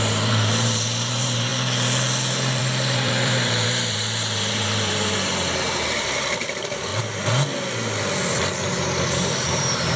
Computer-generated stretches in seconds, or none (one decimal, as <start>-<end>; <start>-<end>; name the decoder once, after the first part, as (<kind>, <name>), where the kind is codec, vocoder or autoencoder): 0.0-1.5 (vocoder, BigVGAN v2); 2.6-6.9; 8.6-10.0